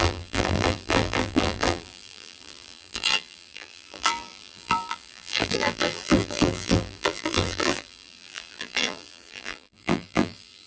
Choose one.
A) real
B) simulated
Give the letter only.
B